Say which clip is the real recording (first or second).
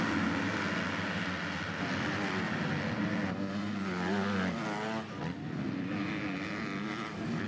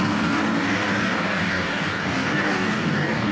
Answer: first